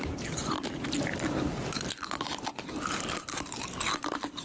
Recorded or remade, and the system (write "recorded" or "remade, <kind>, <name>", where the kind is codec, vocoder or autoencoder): recorded